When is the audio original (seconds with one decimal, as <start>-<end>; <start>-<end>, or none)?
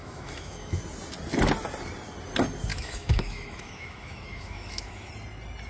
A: 0.8-2.7; 5.1-5.7